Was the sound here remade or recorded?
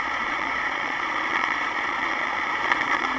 remade